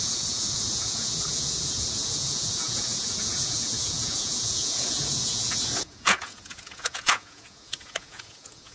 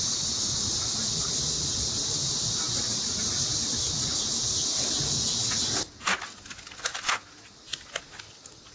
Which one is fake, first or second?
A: first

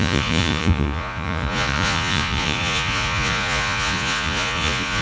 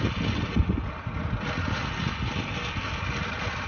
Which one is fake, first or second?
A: first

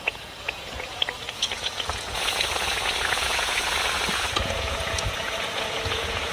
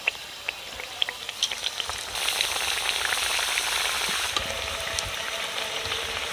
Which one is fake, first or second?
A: first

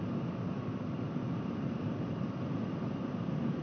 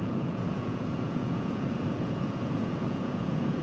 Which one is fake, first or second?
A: second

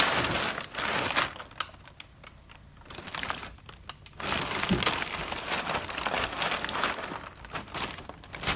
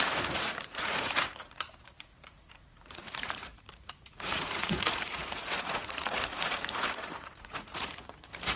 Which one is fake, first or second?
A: second